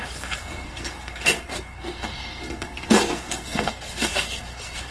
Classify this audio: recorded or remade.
remade